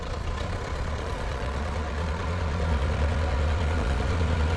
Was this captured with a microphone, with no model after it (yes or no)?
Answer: no